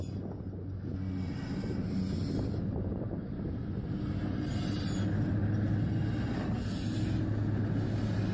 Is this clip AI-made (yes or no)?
no